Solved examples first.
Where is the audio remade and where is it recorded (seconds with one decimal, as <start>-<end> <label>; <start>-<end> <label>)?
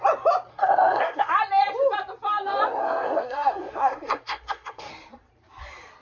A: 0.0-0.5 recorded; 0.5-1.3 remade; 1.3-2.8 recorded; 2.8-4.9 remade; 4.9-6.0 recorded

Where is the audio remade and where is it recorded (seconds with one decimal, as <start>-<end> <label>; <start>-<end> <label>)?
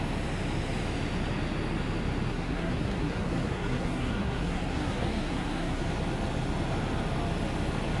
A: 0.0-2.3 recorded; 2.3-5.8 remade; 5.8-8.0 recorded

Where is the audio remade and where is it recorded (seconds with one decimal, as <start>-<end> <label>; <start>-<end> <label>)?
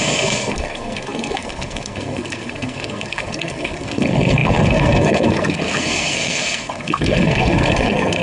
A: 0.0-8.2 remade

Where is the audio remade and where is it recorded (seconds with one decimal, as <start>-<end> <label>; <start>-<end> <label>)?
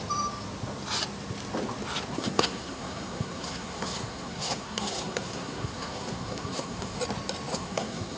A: 0.0-2.1 recorded; 2.1-7.0 remade; 7.0-7.5 recorded; 7.5-8.2 remade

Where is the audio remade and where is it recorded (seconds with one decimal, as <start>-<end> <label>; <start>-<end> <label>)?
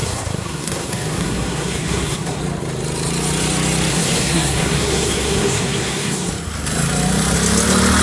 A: 0.0-2.4 remade; 2.4-3.9 recorded; 3.9-6.3 remade; 6.3-8.0 recorded